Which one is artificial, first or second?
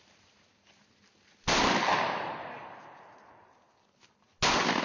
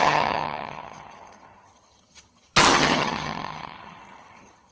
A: second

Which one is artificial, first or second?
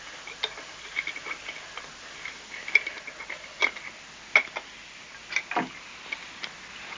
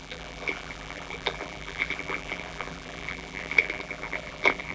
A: second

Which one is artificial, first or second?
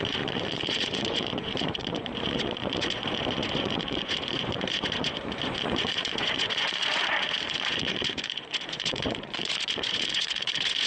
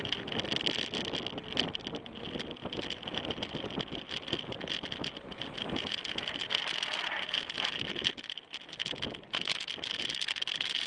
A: first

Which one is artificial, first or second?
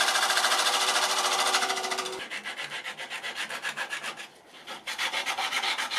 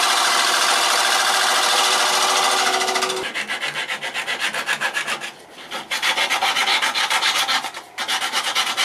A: first